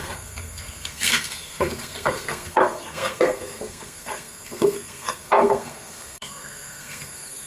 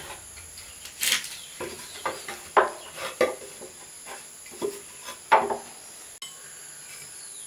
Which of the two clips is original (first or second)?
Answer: second